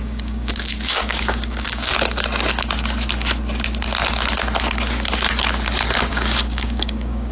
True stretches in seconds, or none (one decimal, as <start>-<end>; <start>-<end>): 1.9-6.1